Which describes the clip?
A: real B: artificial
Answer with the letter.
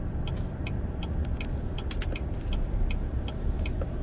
A